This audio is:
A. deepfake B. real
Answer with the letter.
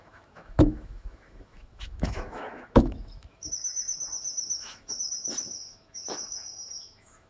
A